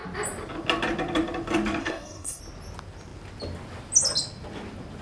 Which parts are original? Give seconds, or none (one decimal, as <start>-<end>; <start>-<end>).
0.0-1.8; 2.4-5.0